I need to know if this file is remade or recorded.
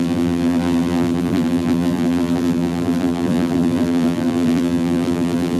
remade